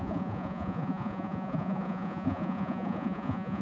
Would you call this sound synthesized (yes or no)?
yes